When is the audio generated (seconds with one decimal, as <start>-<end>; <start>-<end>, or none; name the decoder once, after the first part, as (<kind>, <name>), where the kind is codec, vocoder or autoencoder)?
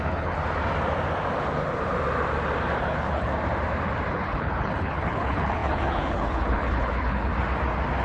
0.0-0.4 (codec, HILCodec); 2.8-3.3; 4.1-7.3